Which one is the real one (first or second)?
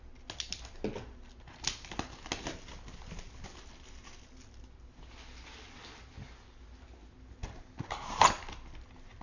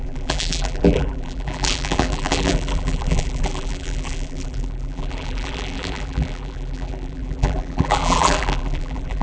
first